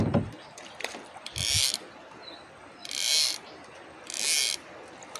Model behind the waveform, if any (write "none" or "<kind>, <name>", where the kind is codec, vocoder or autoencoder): none